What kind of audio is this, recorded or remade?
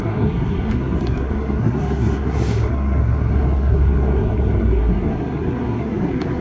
remade